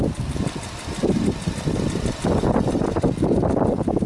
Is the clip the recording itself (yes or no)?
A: yes